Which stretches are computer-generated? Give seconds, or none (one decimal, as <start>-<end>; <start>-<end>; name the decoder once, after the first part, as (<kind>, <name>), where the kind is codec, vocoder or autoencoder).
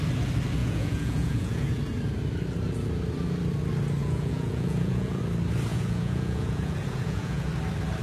0.6-1.8 (vocoder, Vocos); 4.0-5.2; 5.7-7.5